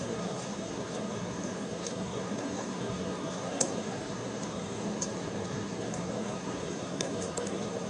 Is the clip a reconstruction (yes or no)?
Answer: yes